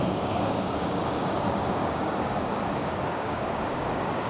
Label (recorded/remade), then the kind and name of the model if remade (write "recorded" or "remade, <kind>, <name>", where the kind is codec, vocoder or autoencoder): remade, codec, DAC